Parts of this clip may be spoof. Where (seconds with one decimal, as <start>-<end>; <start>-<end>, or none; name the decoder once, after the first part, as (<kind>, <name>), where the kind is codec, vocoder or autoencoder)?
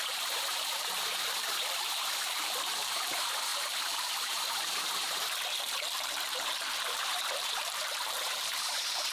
0.0-9.1 (vocoder, BigVGAN v2)